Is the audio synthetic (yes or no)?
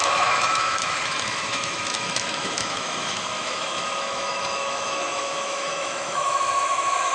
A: yes